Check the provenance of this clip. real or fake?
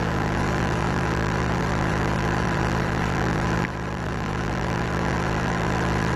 fake